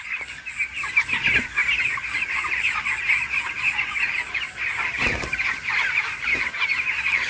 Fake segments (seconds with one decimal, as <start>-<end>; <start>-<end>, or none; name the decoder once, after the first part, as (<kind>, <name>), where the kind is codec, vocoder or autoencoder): none

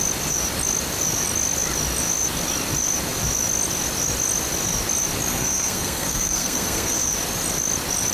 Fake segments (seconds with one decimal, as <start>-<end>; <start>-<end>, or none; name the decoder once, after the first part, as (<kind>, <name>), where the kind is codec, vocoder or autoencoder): 5.3-7.1 (codec, SNAC)

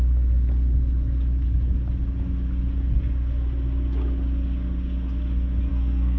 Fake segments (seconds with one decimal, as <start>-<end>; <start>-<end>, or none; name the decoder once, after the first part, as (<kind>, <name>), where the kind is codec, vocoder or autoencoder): 5.7-6.2 (codec, SNAC)

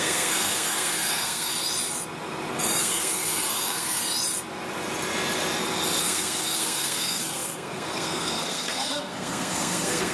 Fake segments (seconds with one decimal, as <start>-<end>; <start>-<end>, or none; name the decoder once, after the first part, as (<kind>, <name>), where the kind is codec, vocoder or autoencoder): 0.0-1.5 (codec, SNAC); 2.8-4.0; 6.0-10.1

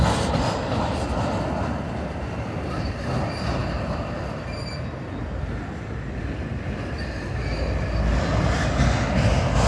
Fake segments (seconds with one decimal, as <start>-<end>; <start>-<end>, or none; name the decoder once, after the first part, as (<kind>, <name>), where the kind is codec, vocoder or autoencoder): none